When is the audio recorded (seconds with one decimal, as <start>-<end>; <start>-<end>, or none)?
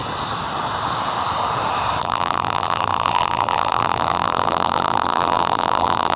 0.0-2.0